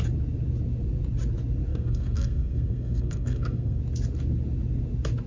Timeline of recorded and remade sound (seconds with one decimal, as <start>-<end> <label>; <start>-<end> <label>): 0.0-1.7 recorded; 1.7-3.8 remade; 3.8-5.3 recorded